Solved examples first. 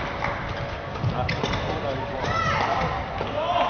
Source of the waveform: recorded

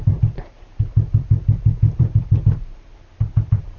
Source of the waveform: remade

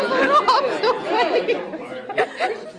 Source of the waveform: recorded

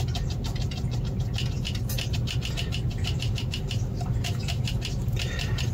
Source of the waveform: recorded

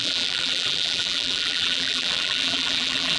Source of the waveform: remade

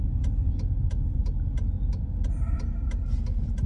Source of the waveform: recorded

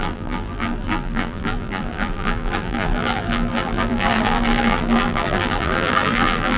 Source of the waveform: remade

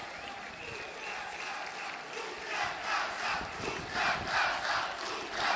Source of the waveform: recorded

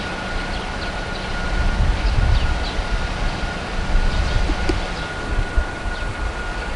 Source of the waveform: recorded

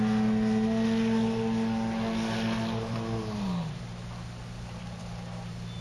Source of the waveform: recorded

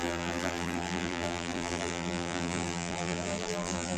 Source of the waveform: remade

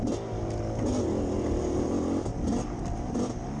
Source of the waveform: recorded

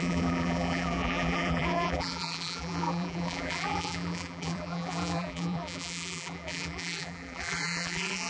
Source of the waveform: remade